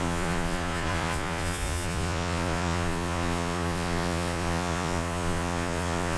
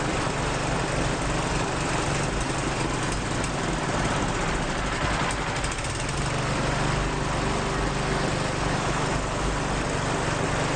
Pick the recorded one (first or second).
second